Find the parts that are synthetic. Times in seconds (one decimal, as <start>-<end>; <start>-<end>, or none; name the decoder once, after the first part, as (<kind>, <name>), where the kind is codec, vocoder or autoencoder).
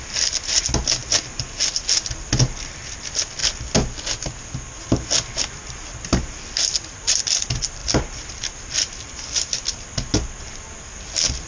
none